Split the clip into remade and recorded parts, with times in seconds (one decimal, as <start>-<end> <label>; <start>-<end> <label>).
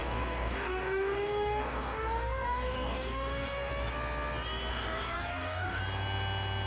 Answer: 0.0-3.7 remade; 3.7-4.7 recorded; 4.7-5.8 remade; 5.8-6.7 recorded